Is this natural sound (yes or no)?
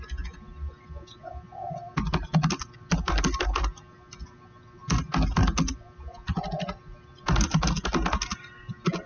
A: yes